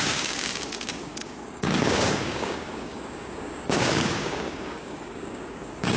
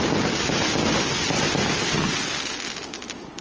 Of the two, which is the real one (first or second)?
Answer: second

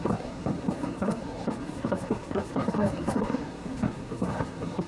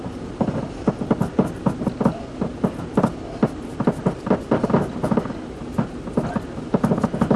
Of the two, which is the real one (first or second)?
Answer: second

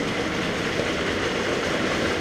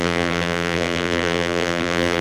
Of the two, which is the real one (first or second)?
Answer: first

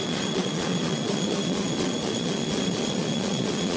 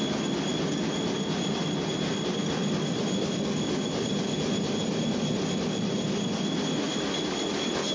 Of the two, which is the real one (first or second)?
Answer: second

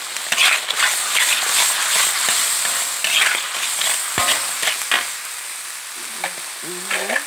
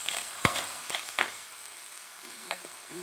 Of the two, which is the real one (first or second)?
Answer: first